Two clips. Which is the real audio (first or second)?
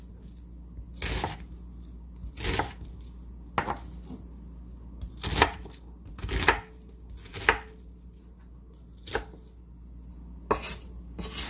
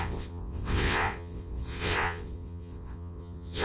first